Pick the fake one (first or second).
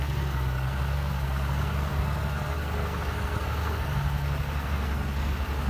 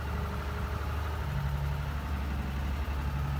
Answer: first